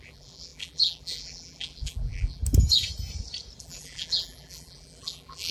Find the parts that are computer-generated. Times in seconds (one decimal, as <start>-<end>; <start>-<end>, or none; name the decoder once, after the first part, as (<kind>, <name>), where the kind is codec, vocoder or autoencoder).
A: 0.0-2.4 (vocoder, BigVGAN v2); 3.6-5.5